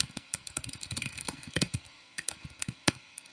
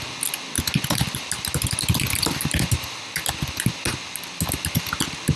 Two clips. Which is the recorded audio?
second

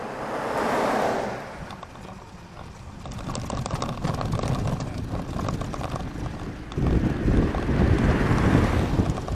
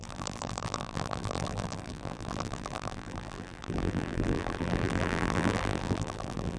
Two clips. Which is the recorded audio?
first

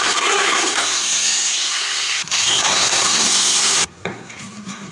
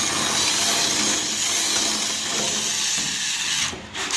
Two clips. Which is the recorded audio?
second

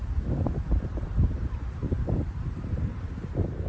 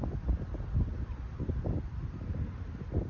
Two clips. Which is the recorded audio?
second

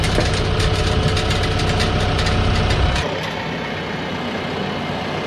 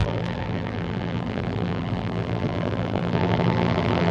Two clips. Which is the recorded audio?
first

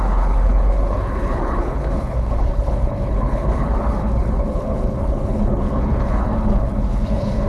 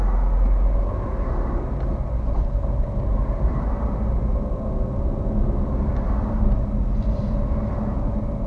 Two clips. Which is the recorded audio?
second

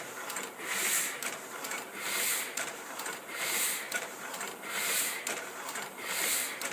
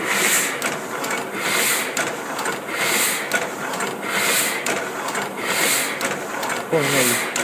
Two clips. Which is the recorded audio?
second